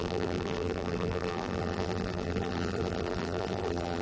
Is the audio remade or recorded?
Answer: remade